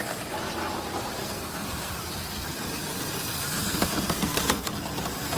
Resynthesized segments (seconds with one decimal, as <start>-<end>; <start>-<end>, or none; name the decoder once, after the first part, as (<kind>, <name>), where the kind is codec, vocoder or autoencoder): 1.2-2.0 (codec, SNAC); 3.6-4.7